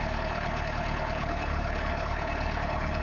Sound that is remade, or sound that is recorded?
remade